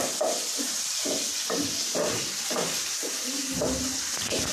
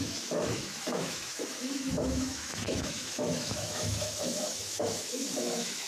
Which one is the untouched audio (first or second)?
first